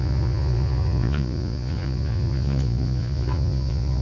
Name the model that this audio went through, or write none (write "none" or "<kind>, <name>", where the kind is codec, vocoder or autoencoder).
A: vocoder, Vocos